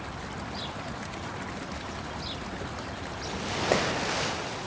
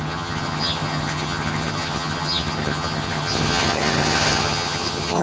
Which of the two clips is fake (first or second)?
second